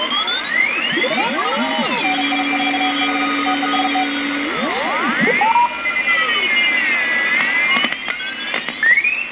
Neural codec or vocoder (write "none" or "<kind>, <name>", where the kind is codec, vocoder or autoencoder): none